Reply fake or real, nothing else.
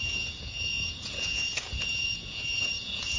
fake